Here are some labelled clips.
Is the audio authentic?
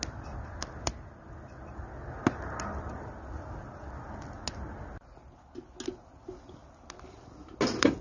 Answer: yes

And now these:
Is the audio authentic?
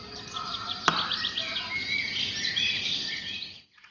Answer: yes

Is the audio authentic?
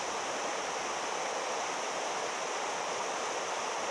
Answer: yes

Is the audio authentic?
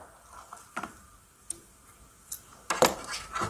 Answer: yes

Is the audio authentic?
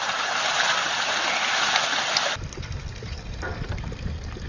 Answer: yes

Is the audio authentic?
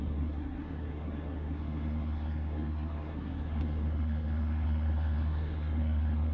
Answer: no